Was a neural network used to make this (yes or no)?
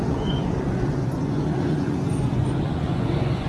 yes